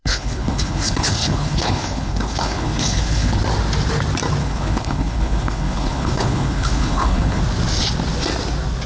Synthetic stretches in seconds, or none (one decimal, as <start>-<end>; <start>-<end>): 0.0-3.4; 4.4-7.4